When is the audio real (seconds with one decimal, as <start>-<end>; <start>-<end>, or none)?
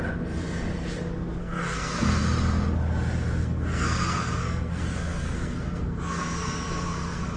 0.0-1.4; 2.2-3.4